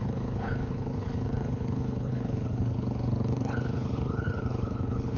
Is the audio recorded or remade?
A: remade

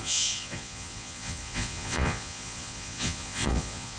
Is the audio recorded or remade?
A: remade